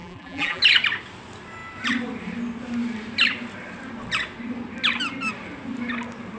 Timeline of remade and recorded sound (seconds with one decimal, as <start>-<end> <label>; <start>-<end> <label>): 0.0-0.6 remade; 0.6-6.4 recorded